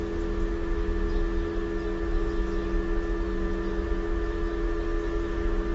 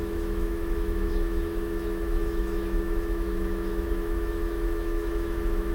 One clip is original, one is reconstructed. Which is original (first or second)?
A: first